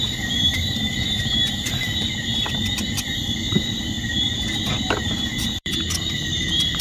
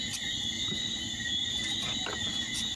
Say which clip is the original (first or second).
second